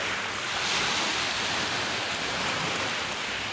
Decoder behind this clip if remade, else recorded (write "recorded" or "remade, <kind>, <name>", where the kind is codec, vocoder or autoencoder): recorded